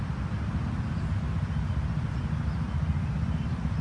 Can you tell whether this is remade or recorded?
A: recorded